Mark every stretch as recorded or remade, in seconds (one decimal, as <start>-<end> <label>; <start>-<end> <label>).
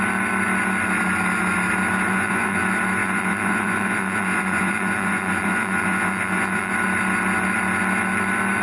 0.0-2.1 recorded; 2.1-2.6 remade; 2.6-3.0 recorded; 3.0-6.7 remade; 6.7-8.6 recorded